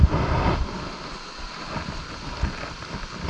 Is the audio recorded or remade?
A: recorded